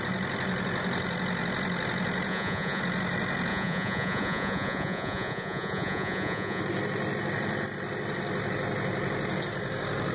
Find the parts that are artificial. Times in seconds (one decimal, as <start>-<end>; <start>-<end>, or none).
2.3-2.8; 3.5-6.6